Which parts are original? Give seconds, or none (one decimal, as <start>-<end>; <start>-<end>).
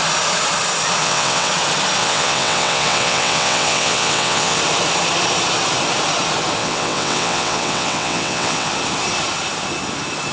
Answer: 0.0-1.0; 1.5-2.0; 4.6-6.6; 8.7-10.3